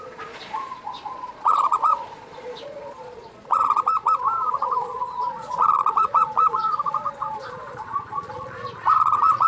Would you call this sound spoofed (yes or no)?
yes